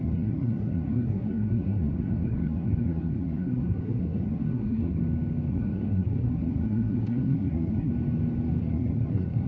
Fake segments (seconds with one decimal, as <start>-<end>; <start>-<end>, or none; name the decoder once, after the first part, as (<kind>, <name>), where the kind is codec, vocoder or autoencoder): 0.0-5.0 (codec, SNAC); 5.5-7.9; 8.6-9.5